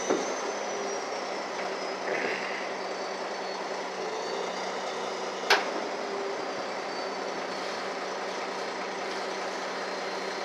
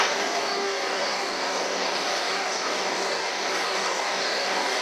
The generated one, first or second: second